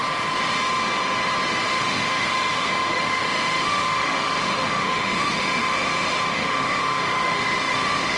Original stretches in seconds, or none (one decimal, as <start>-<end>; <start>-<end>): 0.0-1.7